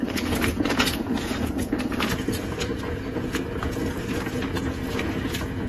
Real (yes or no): no